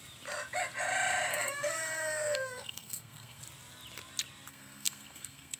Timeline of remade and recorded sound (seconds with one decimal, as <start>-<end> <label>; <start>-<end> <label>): 0.0-1.3 recorded; 1.3-3.4 remade; 3.4-4.5 recorded; 4.5-5.6 remade